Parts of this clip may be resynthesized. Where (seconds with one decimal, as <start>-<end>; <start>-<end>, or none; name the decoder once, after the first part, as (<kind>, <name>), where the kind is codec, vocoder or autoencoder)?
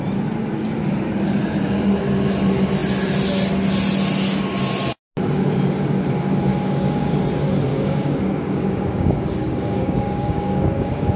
6.5-7.2 (codec, DAC); 7.7-11.2